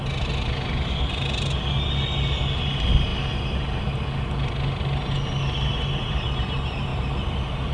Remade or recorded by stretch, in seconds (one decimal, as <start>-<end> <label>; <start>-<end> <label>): 0.0-7.7 recorded

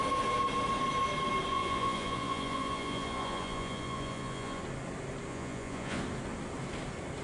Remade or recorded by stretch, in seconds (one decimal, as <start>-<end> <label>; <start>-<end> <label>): 0.0-1.5 recorded; 1.5-4.6 remade; 4.6-5.3 recorded; 5.3-6.0 remade; 6.0-7.2 recorded

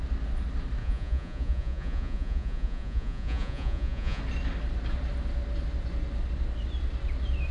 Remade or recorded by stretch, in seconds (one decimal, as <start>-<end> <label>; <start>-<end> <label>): 0.0-0.8 recorded; 0.8-4.2 remade; 4.2-7.5 recorded

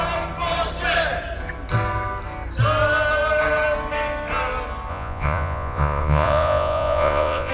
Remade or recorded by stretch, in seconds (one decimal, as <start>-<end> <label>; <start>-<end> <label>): 0.0-4.9 recorded; 4.9-7.5 remade

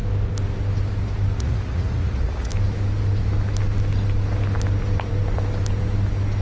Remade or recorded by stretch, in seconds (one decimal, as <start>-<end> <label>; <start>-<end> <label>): 0.0-1.4 recorded; 1.4-2.5 remade; 2.5-6.4 recorded

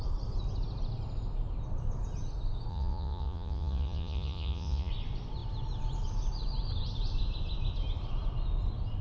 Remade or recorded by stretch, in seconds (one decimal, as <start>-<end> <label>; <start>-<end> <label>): 0.0-2.7 recorded; 2.7-4.9 remade; 4.9-9.0 recorded

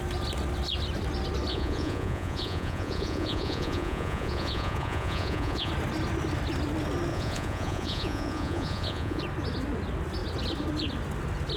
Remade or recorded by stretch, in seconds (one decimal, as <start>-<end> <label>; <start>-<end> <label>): 0.0-1.5 recorded; 1.5-5.7 remade; 5.7-7.1 recorded; 7.1-9.2 remade; 9.2-11.6 recorded